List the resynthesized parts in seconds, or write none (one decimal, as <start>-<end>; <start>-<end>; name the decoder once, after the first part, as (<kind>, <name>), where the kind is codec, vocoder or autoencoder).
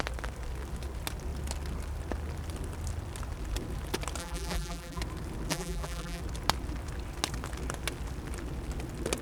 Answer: 4.2-5.0 (vocoder, BigVGAN v2); 5.5-6.2